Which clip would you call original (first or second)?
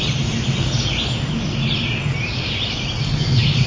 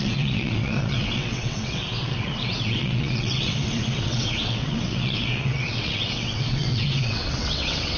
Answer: first